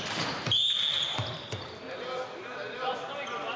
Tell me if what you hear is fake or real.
real